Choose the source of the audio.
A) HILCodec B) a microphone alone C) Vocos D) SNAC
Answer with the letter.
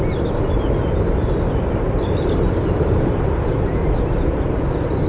B